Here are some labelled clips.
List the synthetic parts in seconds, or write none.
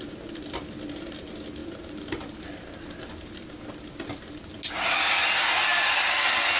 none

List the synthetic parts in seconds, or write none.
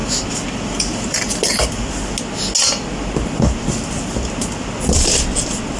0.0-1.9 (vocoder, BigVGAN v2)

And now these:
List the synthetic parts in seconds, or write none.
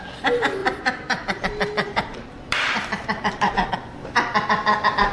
0.6-3.7 (vocoder, BigVGAN v2)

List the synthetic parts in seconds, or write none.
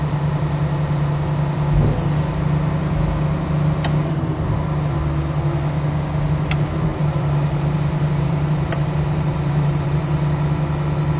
6.9-10.0 (vocoder, BigVGAN v2)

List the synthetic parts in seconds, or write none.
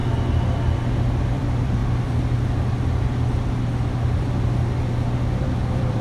1.2-1.8 (vocoder, BigVGAN v2); 5.4-6.0